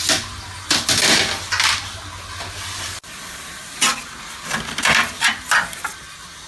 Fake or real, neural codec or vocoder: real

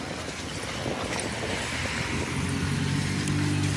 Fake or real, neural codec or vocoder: real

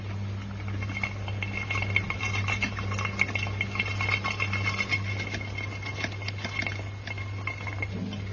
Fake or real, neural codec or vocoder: real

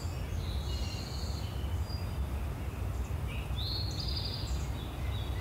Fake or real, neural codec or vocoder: real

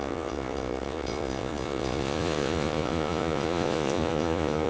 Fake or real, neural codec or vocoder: fake, vocoder, Vocos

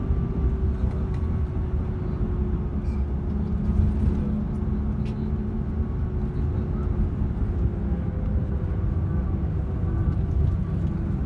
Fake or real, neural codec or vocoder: real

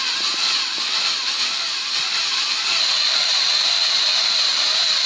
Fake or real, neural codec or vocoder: real